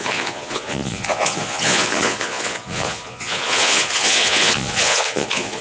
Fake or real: fake